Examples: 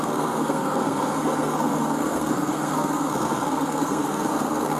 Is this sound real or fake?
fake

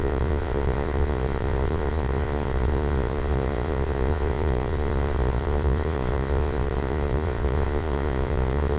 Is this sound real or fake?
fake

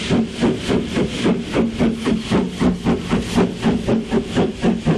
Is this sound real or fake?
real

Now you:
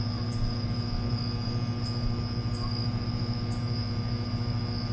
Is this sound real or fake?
real